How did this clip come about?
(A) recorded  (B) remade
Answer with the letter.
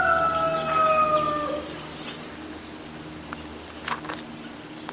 A